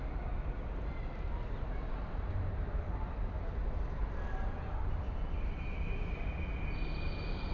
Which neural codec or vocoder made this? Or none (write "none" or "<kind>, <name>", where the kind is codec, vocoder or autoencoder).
none